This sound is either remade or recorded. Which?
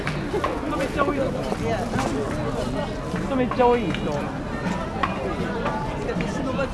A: recorded